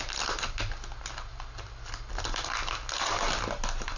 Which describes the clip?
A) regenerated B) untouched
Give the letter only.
B